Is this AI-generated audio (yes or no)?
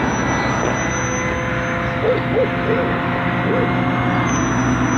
no